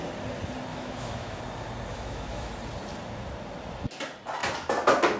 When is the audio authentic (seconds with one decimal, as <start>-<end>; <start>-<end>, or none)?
0.0-0.7; 1.4-1.9; 2.5-5.2

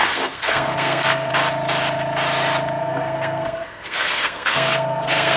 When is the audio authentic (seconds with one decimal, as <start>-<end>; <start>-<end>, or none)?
1.3-2.8

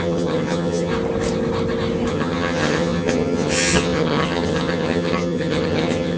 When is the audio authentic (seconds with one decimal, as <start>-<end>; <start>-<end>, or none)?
0.9-2.1

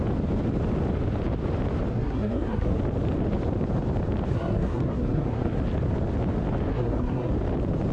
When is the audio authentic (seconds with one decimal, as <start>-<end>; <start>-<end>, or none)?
0.0-1.9; 2.8-4.3; 5.6-6.7; 7.3-7.9

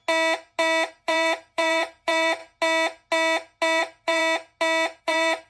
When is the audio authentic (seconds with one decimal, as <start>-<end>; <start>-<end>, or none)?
0.0-0.9; 2.4-3.8; 4.2-5.0

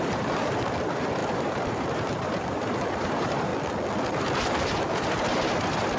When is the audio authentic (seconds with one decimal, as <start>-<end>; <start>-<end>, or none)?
3.5-4.2